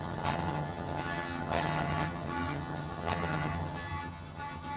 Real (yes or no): no